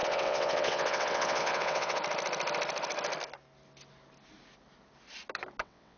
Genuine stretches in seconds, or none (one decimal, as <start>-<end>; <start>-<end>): 2.0-5.6